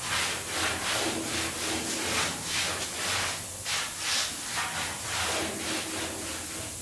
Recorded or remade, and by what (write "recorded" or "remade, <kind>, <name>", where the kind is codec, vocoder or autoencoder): recorded